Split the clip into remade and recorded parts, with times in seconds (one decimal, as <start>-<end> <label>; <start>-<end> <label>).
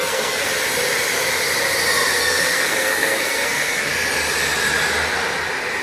0.0-0.5 remade; 0.5-2.1 recorded; 2.1-3.9 remade; 3.9-5.8 recorded